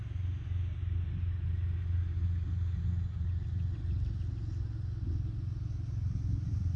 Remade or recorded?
recorded